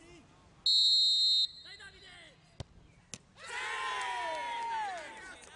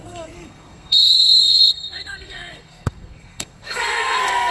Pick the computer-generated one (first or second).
second